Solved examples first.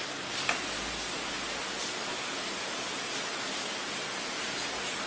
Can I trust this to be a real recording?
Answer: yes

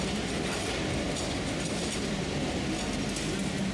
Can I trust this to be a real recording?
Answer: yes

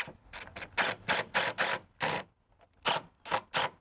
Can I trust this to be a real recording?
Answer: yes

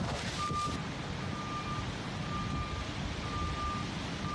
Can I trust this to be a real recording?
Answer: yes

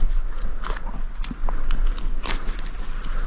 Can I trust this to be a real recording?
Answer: yes